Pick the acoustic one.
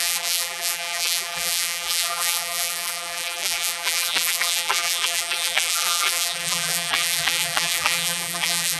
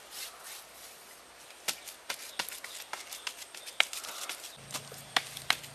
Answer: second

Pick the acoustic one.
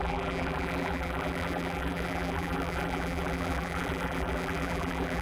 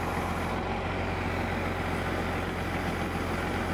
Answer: second